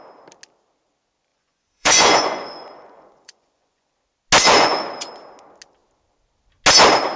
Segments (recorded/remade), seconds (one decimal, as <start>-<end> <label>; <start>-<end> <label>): 0.0-1.3 recorded; 1.3-3.9 remade; 3.9-4.5 recorded; 4.5-5.2 remade; 5.2-7.2 recorded